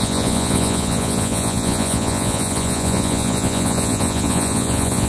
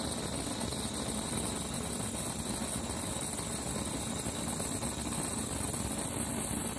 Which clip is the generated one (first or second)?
first